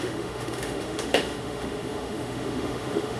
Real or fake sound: fake